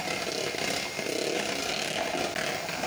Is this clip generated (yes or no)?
no